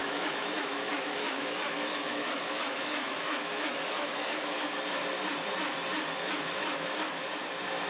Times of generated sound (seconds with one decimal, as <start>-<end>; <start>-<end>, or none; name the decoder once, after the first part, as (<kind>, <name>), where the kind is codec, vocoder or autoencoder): 0.0-4.7 (autoencoder, DAC-VAE); 6.2-7.1